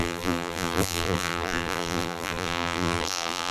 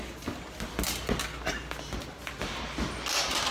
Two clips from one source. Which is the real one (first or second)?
second